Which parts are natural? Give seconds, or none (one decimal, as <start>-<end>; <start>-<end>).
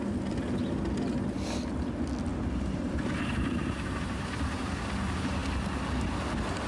0.0-2.3; 4.9-6.7